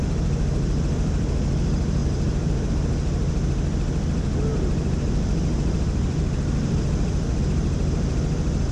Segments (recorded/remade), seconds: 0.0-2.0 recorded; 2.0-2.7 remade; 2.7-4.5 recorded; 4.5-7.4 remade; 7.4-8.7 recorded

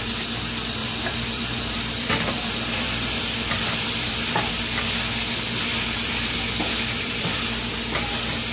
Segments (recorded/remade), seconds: 0.0-0.8 recorded; 0.8-4.5 remade; 4.5-5.7 recorded; 5.7-7.3 remade; 7.3-8.5 recorded

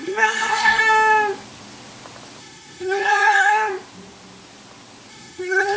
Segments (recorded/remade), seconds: 0.0-0.8 remade; 0.8-2.4 recorded; 2.4-3.7 remade; 3.7-5.1 recorded; 5.1-5.8 remade

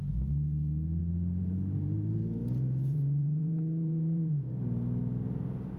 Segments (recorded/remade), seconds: 0.0-1.0 recorded; 1.0-4.5 remade; 4.5-5.8 recorded

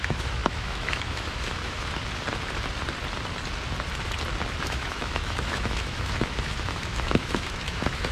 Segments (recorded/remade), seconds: 0.0-2.0 remade; 2.0-4.6 recorded; 4.6-8.1 remade

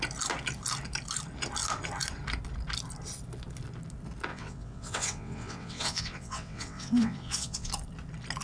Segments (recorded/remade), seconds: 0.0-4.3 recorded; 4.3-7.7 remade; 7.7-8.4 recorded